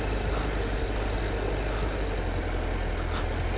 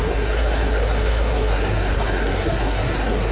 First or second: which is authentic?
first